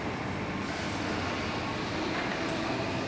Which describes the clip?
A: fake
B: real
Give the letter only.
B